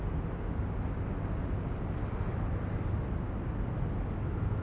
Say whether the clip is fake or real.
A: real